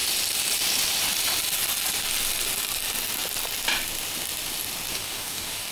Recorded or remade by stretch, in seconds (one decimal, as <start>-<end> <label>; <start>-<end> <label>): 0.0-4.9 recorded; 4.9-5.7 remade